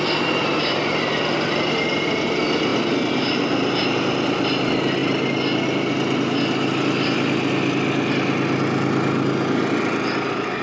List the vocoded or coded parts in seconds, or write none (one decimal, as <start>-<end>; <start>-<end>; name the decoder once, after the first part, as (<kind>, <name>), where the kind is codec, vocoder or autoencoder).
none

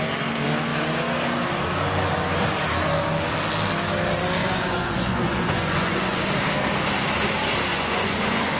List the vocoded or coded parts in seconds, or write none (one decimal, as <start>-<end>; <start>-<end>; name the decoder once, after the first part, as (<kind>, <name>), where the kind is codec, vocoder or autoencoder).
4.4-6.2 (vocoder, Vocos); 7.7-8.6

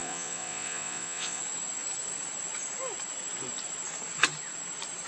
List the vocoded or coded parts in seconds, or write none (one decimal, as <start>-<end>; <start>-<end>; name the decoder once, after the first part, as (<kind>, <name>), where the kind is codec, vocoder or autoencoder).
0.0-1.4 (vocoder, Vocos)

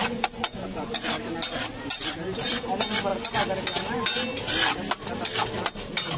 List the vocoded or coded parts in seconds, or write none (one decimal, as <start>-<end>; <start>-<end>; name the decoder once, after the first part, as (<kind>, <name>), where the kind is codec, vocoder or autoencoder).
0.0-1.1 (vocoder, Vocos)

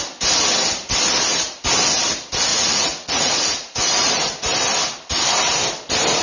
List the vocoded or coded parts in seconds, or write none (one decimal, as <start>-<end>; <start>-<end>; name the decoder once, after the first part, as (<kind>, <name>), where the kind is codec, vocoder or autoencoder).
2.5-4.1 (vocoder, Vocos)

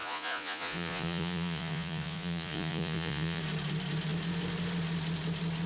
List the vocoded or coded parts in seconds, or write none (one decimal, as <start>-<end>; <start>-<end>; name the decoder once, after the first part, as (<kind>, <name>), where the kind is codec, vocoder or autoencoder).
0.0-3.4 (vocoder, Vocos)